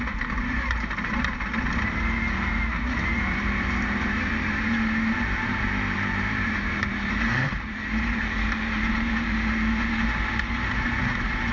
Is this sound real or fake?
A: fake